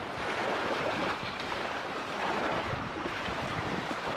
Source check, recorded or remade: remade